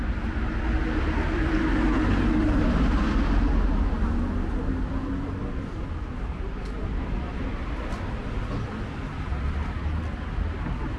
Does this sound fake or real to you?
real